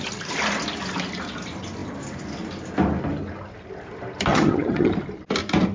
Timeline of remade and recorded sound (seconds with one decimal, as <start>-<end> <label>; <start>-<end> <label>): 0.0-4.3 recorded; 4.3-4.9 remade; 4.9-5.7 recorded

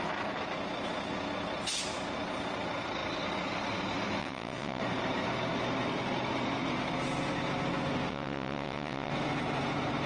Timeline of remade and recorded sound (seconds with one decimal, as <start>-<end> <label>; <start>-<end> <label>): 0.0-4.2 recorded; 4.2-4.8 remade; 4.8-8.1 recorded; 8.1-9.1 remade; 9.1-10.1 recorded